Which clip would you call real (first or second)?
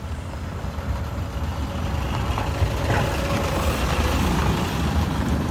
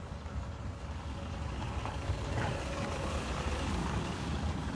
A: first